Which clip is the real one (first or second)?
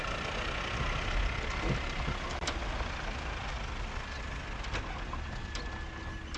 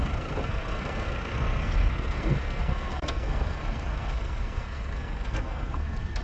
first